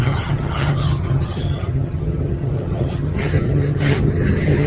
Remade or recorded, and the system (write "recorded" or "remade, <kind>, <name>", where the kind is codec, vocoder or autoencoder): remade, vocoder, HiFi-GAN